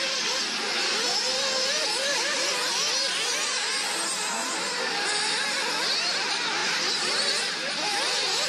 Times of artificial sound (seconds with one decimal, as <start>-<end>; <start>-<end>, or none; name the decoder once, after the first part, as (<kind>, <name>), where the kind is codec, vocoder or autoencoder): 6.6-7.3 (vocoder, BigVGAN v2)